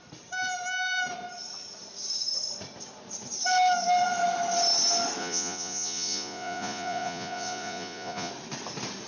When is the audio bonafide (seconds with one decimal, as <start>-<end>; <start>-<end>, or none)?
0.0-5.2; 8.3-9.1

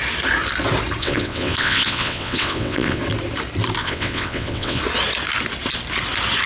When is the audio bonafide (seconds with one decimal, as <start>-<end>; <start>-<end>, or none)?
0.0-1.0; 3.0-3.8; 4.8-6.5

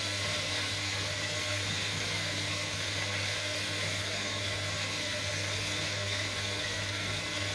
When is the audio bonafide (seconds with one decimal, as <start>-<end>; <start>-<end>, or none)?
none

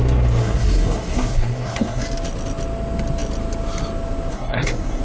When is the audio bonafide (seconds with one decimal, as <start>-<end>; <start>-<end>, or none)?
0.0-0.4; 2.0-4.3

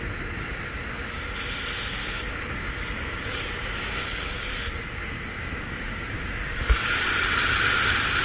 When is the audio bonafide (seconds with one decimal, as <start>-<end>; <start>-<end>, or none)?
0.0-2.0; 6.9-8.2

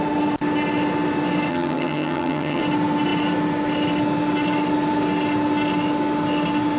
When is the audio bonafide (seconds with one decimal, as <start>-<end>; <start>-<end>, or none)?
0.0-1.5; 2.6-6.8